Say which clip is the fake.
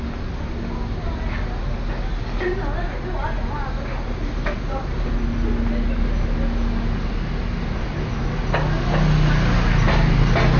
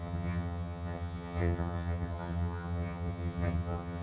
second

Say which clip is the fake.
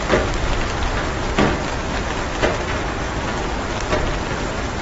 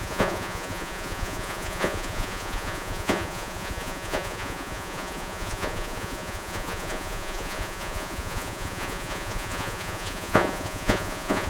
second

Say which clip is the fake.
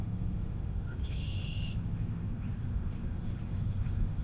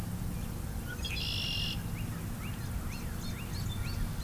first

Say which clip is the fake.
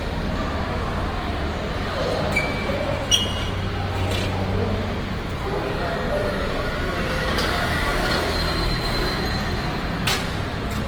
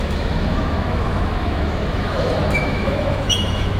second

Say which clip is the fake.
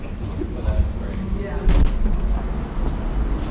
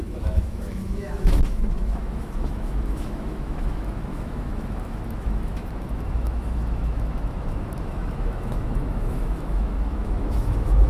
second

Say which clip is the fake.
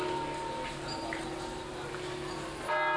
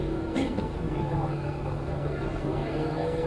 second